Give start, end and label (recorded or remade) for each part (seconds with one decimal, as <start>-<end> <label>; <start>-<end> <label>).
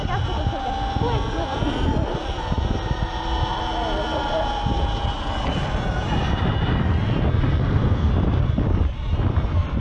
0.0-7.6 recorded; 7.6-8.1 remade; 8.1-9.8 recorded